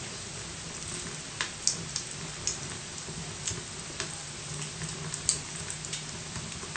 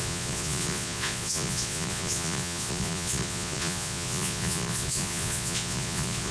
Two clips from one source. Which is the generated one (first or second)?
second